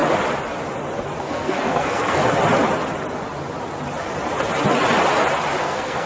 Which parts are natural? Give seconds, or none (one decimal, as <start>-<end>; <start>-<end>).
0.0-1.2; 2.2-5.6